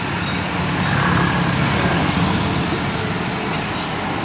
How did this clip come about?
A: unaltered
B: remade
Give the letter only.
A